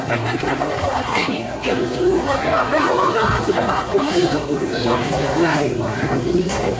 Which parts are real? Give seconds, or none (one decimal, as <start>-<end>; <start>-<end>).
none